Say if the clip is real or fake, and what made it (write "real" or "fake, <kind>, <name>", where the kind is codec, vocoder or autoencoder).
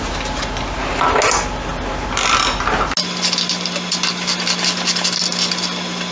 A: real